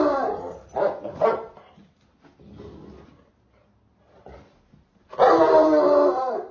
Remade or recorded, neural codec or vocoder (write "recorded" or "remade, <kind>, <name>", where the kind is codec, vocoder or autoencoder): recorded